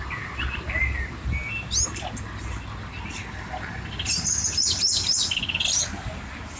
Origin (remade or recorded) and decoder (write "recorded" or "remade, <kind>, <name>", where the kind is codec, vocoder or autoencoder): recorded